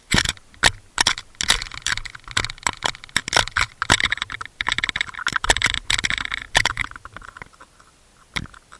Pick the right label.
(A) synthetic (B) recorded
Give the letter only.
B